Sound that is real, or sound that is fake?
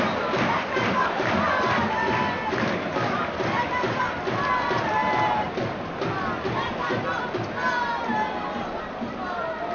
real